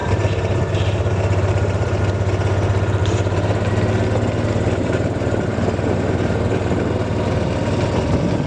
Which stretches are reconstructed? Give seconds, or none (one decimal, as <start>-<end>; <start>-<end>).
0.0-2.0; 3.0-3.7; 4.8-6.9